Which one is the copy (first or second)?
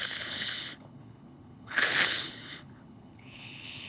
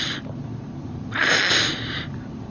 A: first